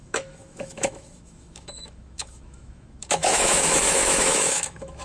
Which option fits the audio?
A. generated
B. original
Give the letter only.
A